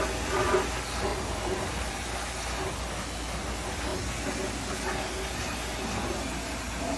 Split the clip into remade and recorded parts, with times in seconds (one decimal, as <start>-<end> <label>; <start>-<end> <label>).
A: 0.0-1.1 recorded; 1.1-1.9 remade; 1.9-7.0 recorded